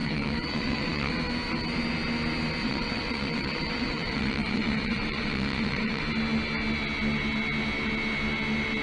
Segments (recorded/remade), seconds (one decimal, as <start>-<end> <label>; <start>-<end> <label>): 0.0-1.1 remade; 1.1-2.6 recorded; 2.6-6.0 remade; 6.0-8.8 recorded